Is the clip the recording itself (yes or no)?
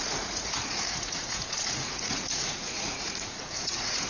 no